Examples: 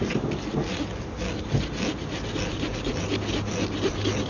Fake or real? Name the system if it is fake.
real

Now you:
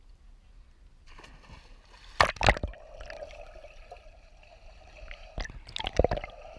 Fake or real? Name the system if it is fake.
real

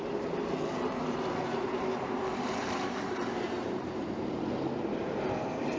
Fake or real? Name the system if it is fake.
fake, vocoder, BigVGAN v2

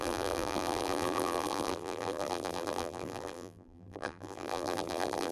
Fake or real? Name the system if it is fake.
fake, vocoder, BigVGAN v2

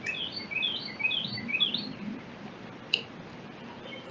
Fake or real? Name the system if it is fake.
real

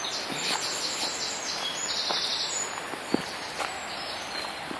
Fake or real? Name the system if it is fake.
real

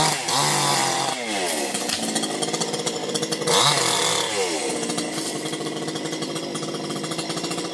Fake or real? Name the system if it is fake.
real